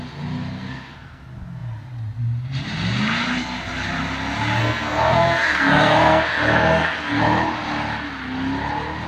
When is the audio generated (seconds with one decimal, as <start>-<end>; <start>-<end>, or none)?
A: 0.5-1.2; 4.6-7.2